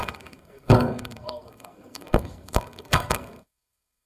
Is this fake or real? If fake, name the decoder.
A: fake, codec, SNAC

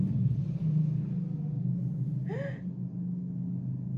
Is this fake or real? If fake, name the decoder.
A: real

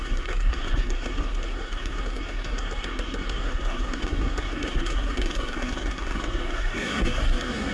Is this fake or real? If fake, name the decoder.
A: fake, codec, SNAC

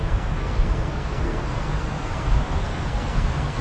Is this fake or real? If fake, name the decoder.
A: fake, codec, SNAC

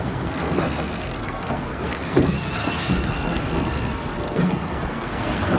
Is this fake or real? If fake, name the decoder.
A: fake, codec, SNAC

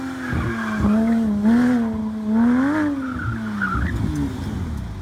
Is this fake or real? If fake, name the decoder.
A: real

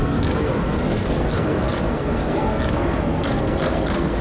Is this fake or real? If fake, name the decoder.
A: fake, codec, SNAC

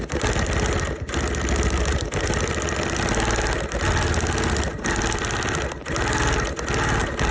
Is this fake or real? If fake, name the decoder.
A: real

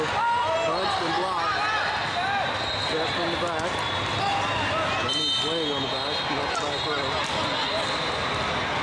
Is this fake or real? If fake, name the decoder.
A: real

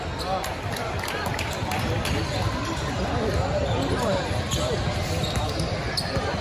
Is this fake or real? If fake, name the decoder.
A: real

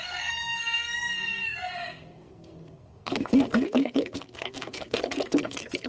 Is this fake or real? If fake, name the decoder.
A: fake, codec, SNAC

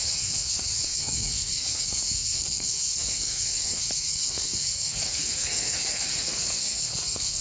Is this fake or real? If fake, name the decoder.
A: fake, codec, SNAC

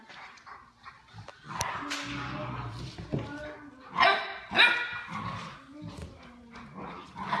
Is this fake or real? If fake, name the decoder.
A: real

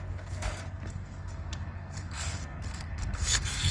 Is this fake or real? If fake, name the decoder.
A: fake, codec, SNAC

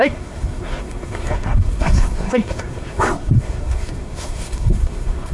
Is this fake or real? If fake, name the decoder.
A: fake, codec, SNAC